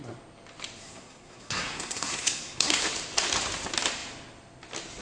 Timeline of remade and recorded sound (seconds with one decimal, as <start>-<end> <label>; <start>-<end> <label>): 0.0-0.8 recorded; 0.8-2.8 remade; 2.8-5.0 recorded